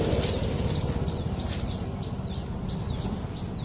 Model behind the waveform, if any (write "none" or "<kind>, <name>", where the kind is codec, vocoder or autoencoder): none